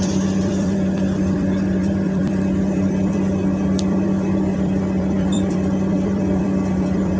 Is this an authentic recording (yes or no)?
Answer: no